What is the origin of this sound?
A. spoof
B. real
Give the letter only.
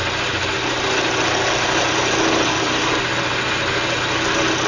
B